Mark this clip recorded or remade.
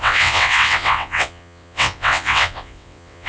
remade